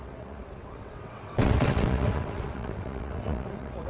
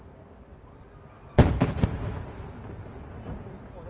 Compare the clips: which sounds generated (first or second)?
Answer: first